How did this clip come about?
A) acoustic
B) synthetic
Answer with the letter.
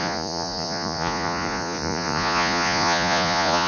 B